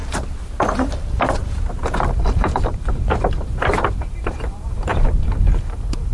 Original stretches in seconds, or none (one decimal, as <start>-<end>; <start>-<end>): 0.0-2.1